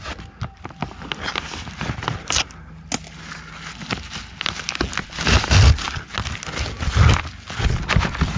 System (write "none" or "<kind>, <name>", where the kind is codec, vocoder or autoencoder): none